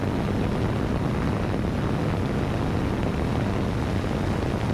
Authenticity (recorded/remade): recorded